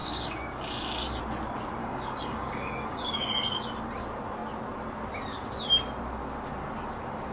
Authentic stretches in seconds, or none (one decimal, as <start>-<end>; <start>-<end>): 1.2-1.8; 3.3-7.3